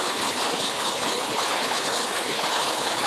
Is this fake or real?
fake